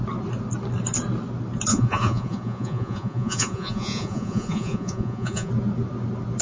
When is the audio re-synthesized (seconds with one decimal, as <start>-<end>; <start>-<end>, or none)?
1.7-5.5